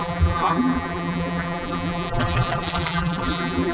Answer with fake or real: fake